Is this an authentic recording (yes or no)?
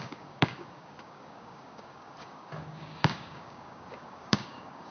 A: no